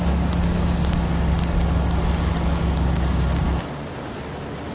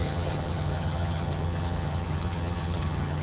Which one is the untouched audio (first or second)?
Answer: first